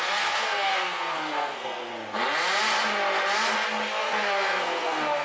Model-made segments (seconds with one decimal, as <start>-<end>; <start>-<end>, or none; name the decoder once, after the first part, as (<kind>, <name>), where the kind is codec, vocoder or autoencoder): 0.0-1.9 (codec, SNAC); 4.0-5.2